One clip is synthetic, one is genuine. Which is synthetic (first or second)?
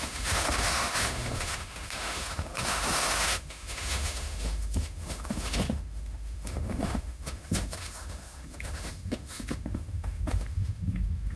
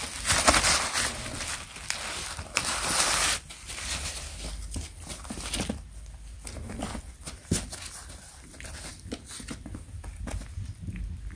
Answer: first